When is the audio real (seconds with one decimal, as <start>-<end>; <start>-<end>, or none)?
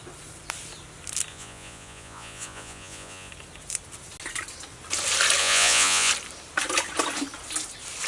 0.0-1.3; 3.3-5.4; 6.1-8.1